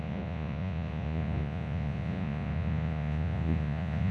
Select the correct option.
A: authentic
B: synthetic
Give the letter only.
B